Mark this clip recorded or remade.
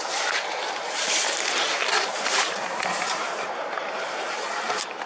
remade